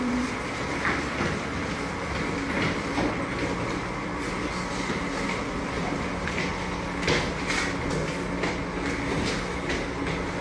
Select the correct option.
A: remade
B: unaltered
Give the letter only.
B